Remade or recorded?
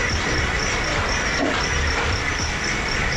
remade